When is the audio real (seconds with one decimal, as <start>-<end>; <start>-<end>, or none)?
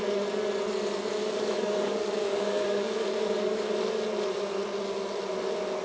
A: 0.0-1.2; 3.7-5.8